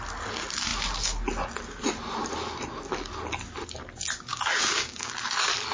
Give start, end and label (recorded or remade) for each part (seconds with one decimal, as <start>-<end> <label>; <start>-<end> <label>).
0.0-4.3 recorded; 4.3-5.1 remade; 5.1-5.7 recorded

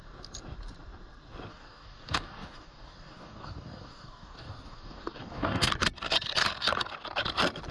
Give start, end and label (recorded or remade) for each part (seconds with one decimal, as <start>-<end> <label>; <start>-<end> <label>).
0.0-1.5 recorded; 1.5-5.7 remade; 5.7-7.7 recorded

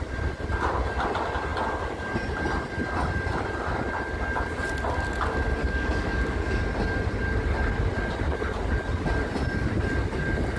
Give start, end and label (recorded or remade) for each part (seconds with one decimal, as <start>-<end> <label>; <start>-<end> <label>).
0.0-5.6 recorded; 5.6-6.6 remade; 6.6-10.6 recorded